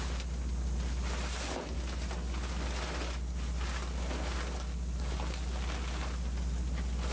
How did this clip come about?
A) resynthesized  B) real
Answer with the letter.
B